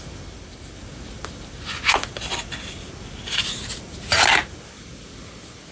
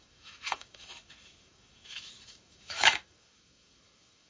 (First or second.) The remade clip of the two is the second